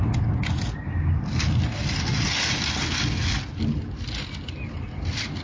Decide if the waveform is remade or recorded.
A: recorded